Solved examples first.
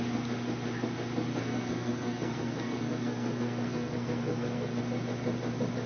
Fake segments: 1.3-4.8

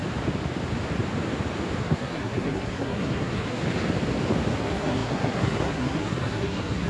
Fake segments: 1.8-3.6; 4.6-6.9

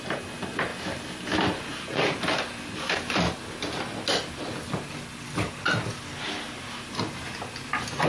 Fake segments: none